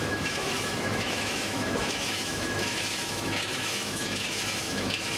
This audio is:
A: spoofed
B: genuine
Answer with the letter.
A